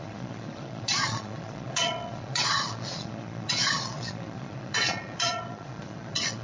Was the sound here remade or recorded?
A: remade